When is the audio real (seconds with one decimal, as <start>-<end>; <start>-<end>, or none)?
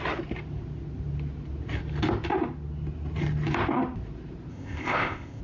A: 0.0-4.5